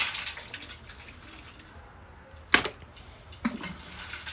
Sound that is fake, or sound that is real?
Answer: real